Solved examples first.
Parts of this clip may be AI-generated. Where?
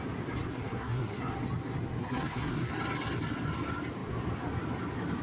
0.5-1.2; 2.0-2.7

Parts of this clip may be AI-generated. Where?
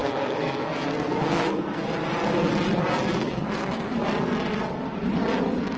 0.0-1.9; 3.2-3.9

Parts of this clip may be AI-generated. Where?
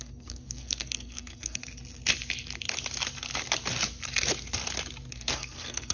0.0-1.6; 5.1-5.9